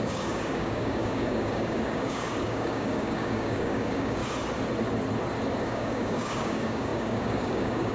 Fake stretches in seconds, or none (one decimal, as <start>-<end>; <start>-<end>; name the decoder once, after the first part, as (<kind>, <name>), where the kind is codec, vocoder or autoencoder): 0.0-4.2 (codec, DAC); 5.6-7.9